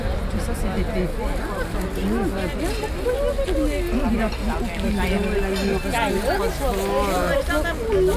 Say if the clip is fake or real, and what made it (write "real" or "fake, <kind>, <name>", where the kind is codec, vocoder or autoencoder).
real